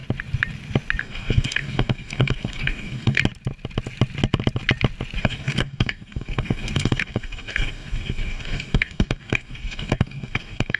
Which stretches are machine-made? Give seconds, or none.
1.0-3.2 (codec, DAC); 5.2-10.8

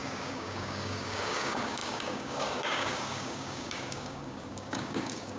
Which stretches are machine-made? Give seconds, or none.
0.0-5.4 (codec, DAC)

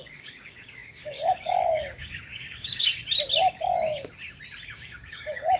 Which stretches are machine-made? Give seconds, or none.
0.0-2.9 (codec, DAC); 3.5-3.9; 4.7-5.6